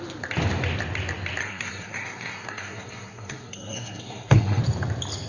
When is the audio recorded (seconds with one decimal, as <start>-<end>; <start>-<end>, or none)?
0.0-1.4; 4.6-5.3